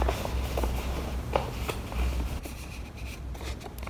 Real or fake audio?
real